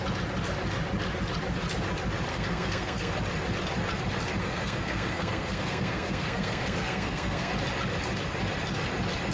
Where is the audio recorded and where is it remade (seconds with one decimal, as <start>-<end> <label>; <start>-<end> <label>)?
0.0-2.3 recorded; 2.3-3.1 remade; 3.1-4.4 recorded; 4.4-7.5 remade; 7.5-9.3 recorded